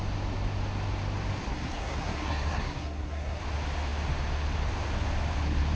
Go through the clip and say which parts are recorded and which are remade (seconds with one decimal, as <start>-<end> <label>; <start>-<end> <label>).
0.0-1.5 recorded; 1.5-3.4 remade; 3.4-5.8 recorded